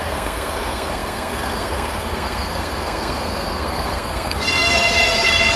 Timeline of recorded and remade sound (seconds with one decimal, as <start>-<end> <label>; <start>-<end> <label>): 0.0-5.6 remade